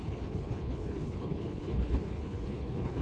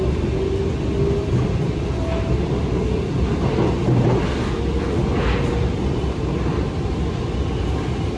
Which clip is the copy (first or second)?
first